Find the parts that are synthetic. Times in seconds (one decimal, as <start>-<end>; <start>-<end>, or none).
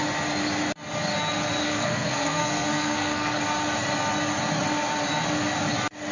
1.6-3.4